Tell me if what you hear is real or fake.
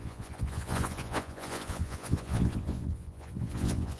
fake